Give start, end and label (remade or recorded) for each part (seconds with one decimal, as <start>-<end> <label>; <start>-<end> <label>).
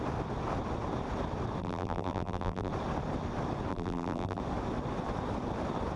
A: 0.0-1.6 recorded; 1.6-2.7 remade; 2.7-3.7 recorded; 3.7-4.4 remade; 4.4-6.0 recorded